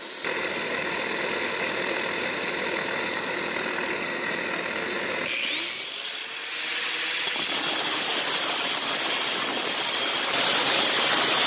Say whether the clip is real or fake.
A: real